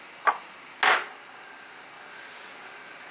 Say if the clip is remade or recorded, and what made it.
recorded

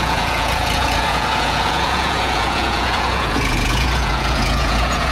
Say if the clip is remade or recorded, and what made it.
remade, vocoder, Vocos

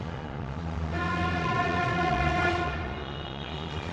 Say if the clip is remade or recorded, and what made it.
remade, vocoder, Vocos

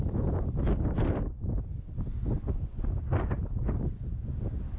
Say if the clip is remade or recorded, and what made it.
recorded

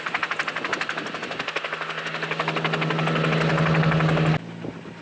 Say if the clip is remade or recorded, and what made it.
recorded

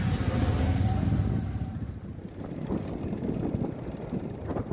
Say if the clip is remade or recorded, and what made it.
recorded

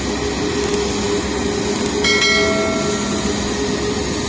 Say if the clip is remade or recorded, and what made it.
recorded